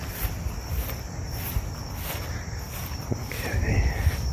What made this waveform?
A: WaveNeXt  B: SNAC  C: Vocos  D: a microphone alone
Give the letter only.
D